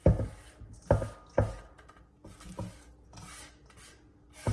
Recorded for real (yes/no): yes